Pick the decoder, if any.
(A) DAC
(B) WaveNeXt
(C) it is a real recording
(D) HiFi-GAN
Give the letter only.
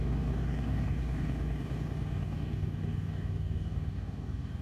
A